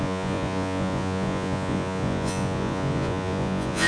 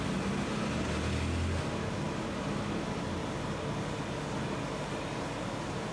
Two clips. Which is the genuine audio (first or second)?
second